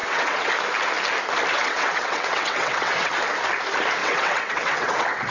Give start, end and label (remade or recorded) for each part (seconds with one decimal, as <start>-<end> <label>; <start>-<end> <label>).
0.0-0.5 remade; 0.5-1.5 recorded; 1.5-3.1 remade; 3.1-4.0 recorded; 4.0-5.3 remade